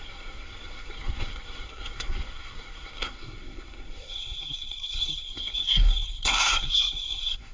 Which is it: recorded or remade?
remade